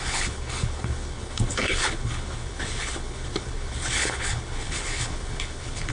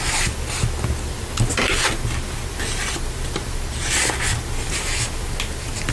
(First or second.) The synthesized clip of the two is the first